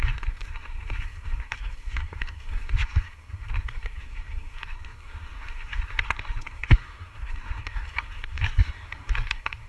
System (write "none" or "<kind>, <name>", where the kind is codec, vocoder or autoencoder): codec, SNAC